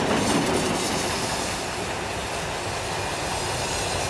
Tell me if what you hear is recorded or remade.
recorded